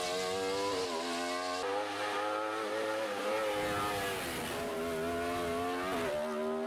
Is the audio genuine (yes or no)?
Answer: yes